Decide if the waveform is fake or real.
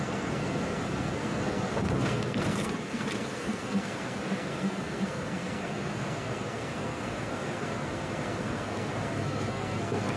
fake